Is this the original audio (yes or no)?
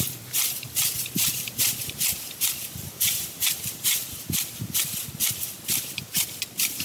no